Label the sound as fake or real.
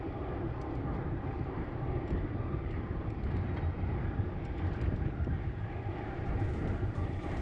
fake